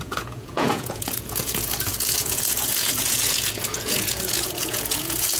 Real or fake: fake